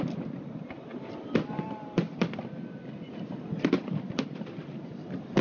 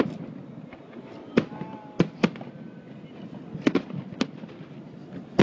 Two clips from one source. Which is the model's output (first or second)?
first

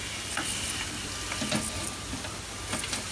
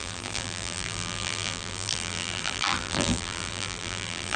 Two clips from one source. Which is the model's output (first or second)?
second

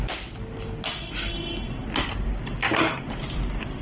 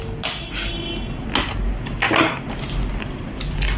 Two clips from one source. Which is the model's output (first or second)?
first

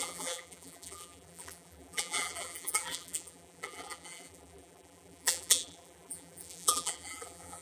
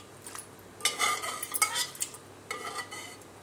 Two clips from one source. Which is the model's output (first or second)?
first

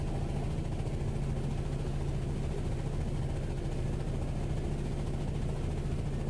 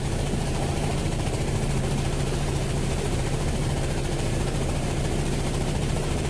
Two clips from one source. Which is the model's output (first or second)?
second